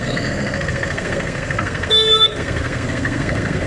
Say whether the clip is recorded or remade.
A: remade